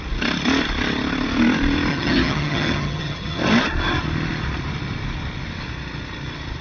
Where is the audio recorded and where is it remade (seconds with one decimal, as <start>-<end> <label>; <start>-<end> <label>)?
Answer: 0.0-1.9 recorded; 1.9-3.4 remade; 3.4-6.6 recorded